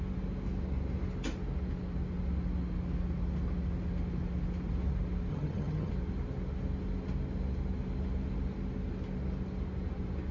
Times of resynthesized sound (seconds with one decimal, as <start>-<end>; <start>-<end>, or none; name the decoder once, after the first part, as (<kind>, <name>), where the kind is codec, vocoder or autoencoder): 5.3-5.9 (vocoder, HiFi-GAN)